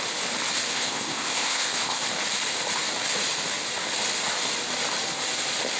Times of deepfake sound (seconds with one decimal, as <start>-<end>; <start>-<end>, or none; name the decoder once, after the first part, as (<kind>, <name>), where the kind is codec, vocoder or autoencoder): 0.7-2.0 (codec, ZipCodec)